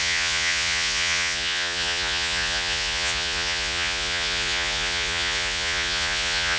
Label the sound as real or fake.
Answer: fake